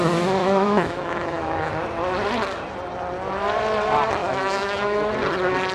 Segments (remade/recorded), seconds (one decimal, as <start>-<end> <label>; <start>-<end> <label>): 0.0-0.4 recorded; 0.4-1.7 remade; 1.7-4.2 recorded; 4.2-5.1 remade; 5.1-5.7 recorded